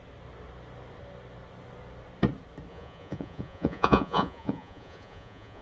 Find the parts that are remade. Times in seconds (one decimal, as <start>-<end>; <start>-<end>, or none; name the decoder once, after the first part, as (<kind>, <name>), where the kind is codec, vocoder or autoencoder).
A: 2.7-5.6 (vocoder, Vocos)